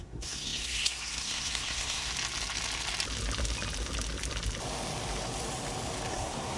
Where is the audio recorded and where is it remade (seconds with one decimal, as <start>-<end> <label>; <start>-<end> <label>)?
0.0-2.1 remade; 2.1-6.1 recorded; 6.1-6.6 remade